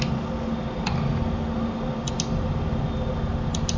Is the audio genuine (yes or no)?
yes